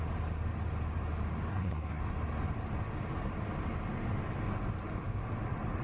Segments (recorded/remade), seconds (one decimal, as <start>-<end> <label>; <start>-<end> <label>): 0.0-1.5 recorded; 1.5-2.0 remade; 2.0-5.8 recorded